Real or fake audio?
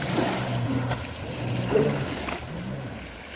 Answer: real